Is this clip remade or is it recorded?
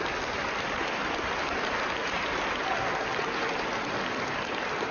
recorded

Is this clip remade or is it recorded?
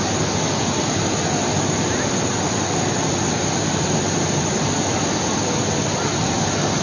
recorded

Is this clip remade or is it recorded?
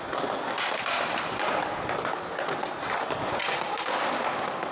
recorded